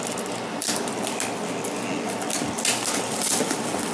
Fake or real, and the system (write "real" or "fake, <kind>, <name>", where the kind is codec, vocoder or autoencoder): real